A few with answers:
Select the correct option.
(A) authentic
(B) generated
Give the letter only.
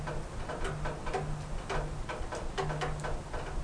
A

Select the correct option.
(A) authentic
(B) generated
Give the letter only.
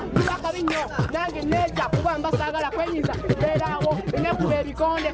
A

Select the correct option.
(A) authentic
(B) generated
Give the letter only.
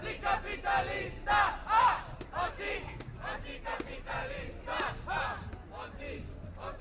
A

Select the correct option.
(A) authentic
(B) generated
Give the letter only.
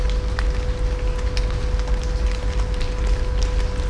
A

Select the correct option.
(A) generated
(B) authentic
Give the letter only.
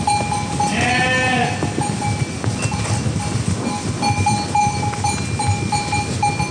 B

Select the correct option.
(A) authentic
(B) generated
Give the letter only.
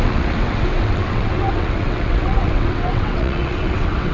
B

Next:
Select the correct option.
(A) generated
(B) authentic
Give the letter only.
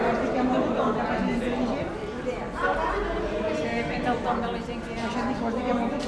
B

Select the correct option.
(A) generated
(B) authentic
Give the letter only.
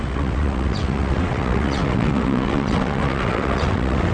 A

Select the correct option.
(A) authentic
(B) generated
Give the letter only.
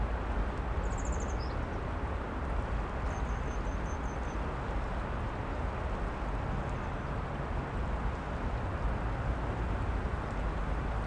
A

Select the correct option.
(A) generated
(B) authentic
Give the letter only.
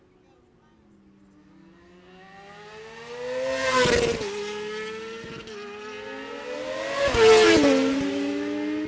B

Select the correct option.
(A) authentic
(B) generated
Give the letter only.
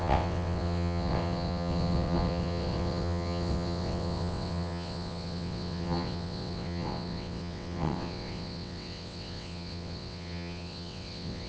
B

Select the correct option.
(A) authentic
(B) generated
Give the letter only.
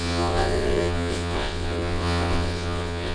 B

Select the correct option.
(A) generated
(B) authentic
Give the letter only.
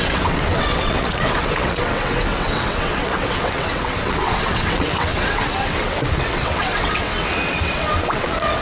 A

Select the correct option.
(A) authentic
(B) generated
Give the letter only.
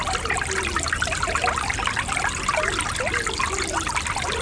A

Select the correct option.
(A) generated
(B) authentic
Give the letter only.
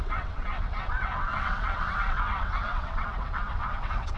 A